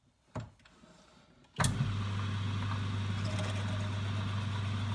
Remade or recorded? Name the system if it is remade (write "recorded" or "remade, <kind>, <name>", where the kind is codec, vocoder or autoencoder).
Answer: recorded